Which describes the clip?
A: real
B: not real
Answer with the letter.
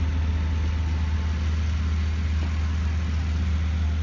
A